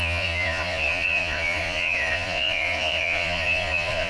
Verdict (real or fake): fake